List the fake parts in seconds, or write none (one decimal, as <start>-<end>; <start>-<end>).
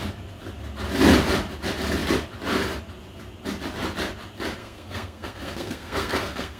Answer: 4.6-6.6